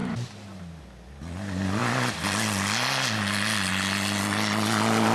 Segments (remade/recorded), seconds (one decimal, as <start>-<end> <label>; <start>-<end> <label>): 0.0-0.6 remade; 0.6-1.8 recorded; 1.8-3.7 remade; 3.7-5.1 recorded